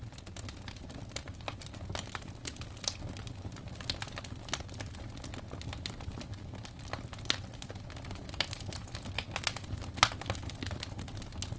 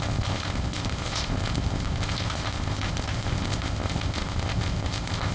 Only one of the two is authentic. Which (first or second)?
first